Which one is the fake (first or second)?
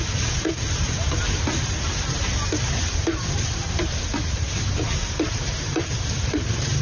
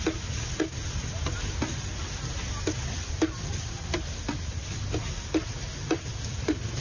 first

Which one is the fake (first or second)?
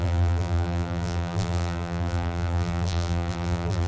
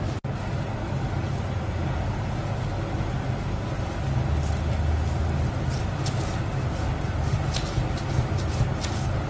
first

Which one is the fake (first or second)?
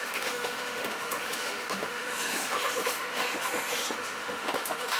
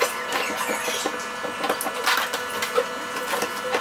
first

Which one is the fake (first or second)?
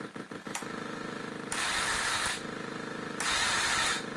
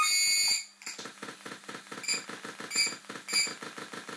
first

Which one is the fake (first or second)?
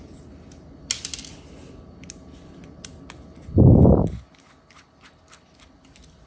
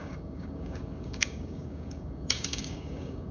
second